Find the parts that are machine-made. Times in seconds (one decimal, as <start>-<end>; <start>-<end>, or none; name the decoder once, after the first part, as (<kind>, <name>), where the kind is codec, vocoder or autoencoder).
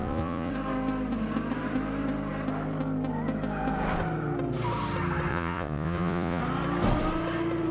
0.0-0.5 (vocoder, Vocos); 5.3-6.4